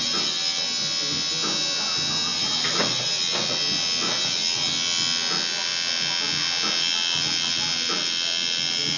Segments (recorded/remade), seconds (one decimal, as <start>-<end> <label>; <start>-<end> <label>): 0.0-9.0 recorded